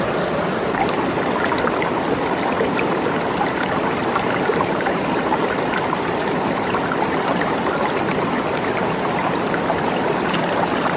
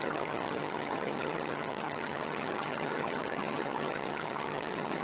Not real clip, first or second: second